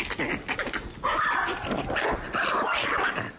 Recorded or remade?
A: recorded